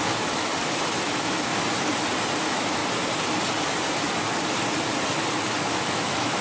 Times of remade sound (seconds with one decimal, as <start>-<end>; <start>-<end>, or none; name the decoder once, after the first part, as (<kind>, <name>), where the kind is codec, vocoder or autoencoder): 0.0-0.5 (autoencoder, DAC-VAE); 1.0-1.5; 2.4-2.8; 5.7-6.4